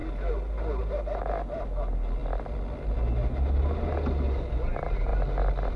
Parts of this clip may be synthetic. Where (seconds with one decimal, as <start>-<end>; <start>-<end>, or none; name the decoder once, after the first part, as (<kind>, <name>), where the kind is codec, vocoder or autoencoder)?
none